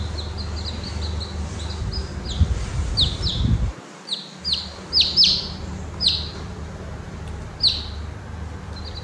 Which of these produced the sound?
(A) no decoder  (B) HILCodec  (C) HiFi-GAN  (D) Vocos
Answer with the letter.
A